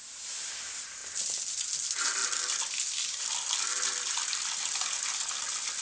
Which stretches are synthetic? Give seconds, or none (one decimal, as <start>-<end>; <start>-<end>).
none